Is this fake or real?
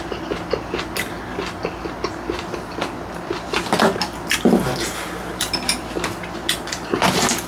real